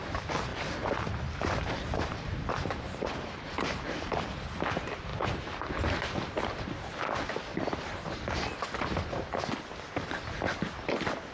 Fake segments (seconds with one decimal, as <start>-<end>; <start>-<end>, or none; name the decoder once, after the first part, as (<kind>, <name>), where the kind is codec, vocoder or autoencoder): 0.5-4.2 (vocoder, BigVGAN v2); 5.1-5.7; 7.5-8.2